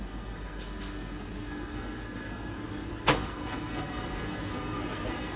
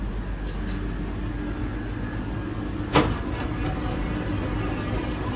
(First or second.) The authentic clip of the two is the second